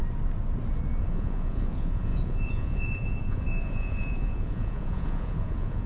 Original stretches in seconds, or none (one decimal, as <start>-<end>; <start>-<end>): 0.0-1.0